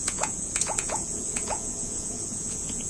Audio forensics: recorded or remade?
remade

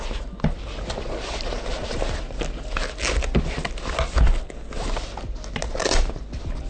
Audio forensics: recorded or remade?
recorded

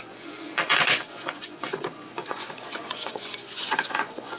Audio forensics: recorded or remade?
remade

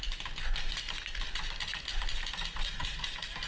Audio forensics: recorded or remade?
recorded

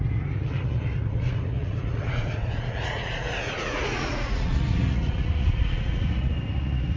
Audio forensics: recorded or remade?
remade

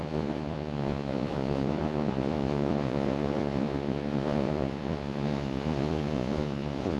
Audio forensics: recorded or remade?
remade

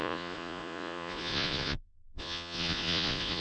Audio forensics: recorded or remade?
remade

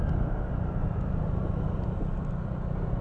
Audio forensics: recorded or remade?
recorded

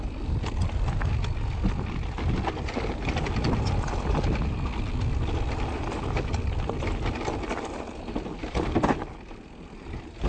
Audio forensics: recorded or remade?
recorded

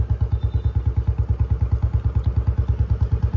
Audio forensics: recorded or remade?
recorded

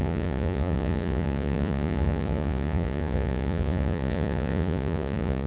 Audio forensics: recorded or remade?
remade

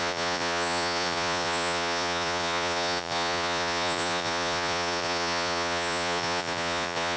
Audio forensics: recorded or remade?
remade